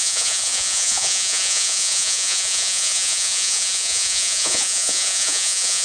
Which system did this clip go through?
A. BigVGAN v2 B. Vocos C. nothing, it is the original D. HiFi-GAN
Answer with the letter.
B